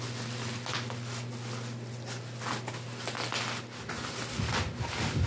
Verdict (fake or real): real